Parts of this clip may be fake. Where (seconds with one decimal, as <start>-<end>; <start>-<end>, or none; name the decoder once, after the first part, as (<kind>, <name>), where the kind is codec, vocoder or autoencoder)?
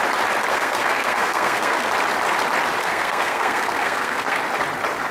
0.5-1.9 (codec, SNAC); 2.8-4.4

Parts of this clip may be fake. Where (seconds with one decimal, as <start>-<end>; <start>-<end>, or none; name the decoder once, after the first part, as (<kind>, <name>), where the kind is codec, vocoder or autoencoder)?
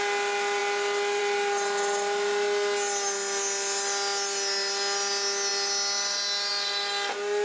none